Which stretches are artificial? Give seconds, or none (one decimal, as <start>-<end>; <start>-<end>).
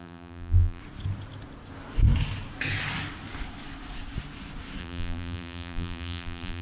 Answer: 0.0-0.8; 4.8-6.6